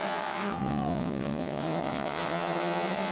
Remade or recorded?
remade